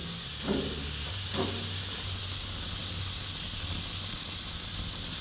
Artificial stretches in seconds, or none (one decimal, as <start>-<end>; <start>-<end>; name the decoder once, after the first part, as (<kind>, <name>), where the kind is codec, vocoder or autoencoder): none